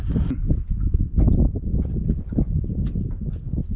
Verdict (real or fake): real